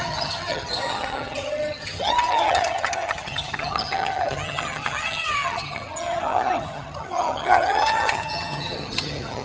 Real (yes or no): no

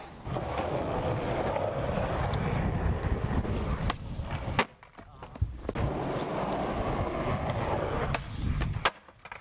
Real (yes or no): yes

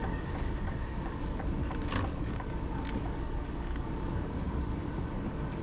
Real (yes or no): no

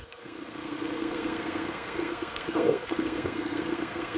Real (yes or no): no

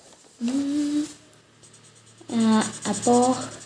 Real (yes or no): yes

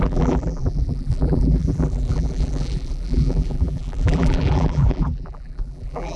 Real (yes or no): no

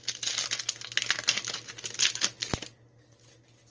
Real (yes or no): yes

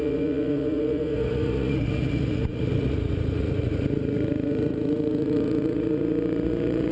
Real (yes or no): no